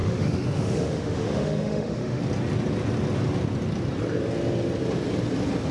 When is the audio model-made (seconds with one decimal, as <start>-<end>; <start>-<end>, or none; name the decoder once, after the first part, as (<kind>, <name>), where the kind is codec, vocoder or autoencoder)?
0.0-2.2 (autoencoder, DAC-VAE)